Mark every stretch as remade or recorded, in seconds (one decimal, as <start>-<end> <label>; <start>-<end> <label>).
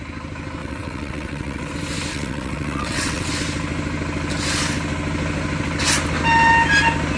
0.0-0.6 recorded; 0.6-1.7 remade; 1.7-2.1 recorded; 2.1-3.3 remade; 3.3-7.2 recorded